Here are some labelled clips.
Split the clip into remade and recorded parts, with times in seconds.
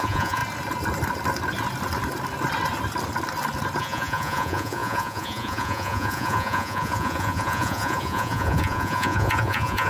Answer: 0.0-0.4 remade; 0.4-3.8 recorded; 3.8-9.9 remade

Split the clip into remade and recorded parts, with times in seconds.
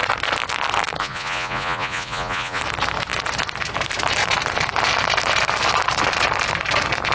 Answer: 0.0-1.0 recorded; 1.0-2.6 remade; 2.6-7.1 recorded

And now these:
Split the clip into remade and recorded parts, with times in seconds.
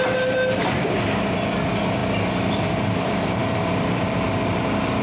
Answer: 0.0-5.0 recorded